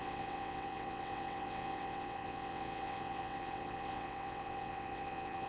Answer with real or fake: fake